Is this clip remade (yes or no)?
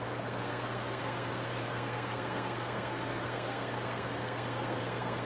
yes